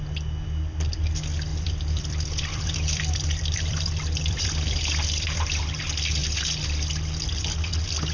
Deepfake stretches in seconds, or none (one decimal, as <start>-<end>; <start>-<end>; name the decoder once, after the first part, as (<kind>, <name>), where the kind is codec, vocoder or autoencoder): 1.5-5.7 (vocoder, BigVGAN v2)